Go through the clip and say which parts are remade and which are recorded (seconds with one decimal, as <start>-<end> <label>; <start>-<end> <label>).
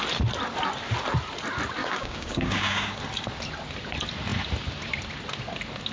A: 0.0-1.8 recorded; 1.8-3.0 remade; 3.0-5.9 recorded